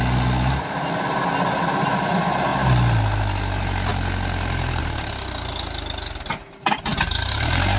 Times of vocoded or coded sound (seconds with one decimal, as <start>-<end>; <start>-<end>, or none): none